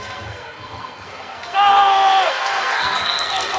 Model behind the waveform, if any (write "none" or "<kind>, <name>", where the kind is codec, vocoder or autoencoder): codec, SNAC